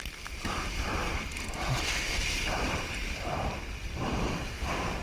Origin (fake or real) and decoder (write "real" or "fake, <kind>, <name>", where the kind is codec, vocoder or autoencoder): fake, vocoder, BigVGAN v2